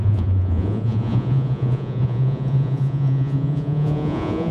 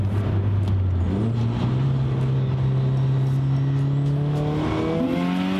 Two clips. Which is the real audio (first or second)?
second